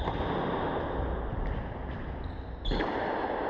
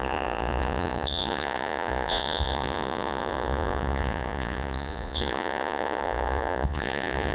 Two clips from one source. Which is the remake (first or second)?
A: second